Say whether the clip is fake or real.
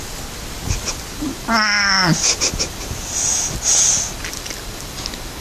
real